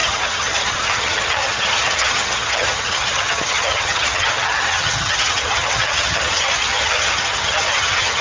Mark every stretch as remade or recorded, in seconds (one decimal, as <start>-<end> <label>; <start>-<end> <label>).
0.0-8.2 remade